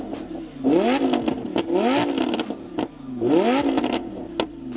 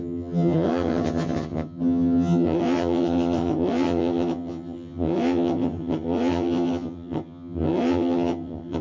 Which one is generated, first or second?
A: second